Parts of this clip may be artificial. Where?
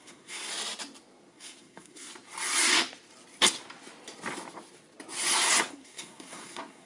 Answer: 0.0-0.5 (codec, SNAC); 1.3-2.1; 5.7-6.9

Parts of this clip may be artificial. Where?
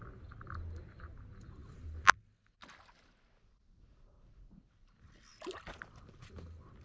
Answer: none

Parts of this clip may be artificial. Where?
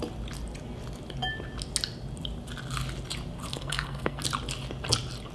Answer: 3.5-4.2 (codec, SNAC)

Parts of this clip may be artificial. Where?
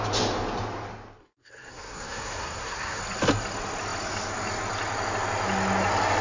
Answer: 1.2-3.0 (codec, SNAC)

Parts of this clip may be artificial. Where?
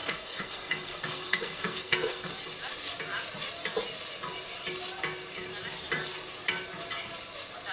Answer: 0.0-2.3 (codec, SNAC)